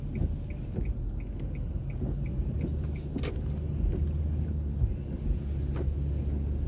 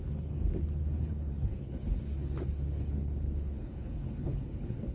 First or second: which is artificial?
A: second